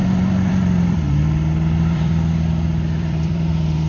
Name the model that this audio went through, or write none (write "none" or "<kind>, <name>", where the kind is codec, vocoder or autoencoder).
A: vocoder, BigVGAN v2